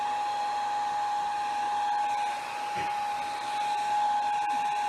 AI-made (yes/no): no